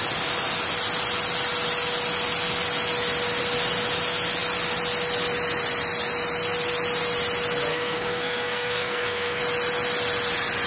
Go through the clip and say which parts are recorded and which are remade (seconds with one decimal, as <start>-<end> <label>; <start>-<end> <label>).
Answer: 0.0-7.7 recorded; 7.7-9.4 remade; 9.4-10.7 recorded